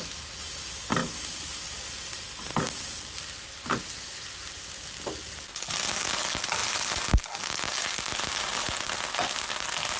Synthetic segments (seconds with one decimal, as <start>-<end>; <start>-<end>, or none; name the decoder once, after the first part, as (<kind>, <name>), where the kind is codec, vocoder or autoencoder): none